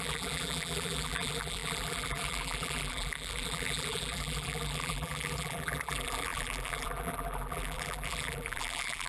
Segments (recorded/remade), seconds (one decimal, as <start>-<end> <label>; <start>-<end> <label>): 0.0-9.1 remade